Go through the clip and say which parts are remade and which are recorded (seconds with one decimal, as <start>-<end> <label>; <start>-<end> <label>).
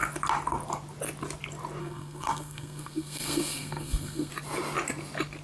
0.0-1.8 recorded; 1.8-4.3 remade; 4.3-5.4 recorded